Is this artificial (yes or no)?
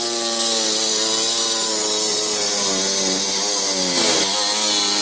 no